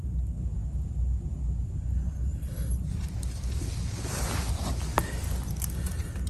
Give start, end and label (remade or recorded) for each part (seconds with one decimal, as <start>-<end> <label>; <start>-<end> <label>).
0.0-6.3 recorded